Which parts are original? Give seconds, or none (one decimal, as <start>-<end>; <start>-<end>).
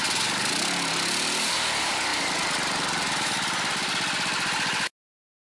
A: 0.0-5.5